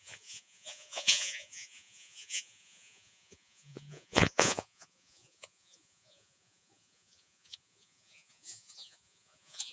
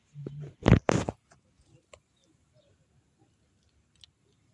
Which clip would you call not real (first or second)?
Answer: first